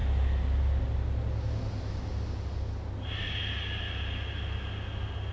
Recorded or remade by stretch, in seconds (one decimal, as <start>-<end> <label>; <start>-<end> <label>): 0.0-5.3 recorded